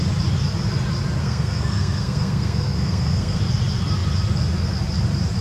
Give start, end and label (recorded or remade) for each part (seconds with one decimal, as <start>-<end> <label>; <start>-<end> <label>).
0.0-1.2 recorded; 1.2-3.4 remade; 3.4-5.4 recorded